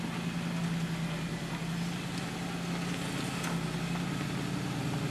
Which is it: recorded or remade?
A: recorded